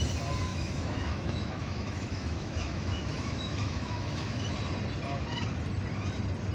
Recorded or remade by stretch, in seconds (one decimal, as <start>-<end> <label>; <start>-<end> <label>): 0.0-0.5 recorded; 0.5-4.4 remade; 4.4-6.5 recorded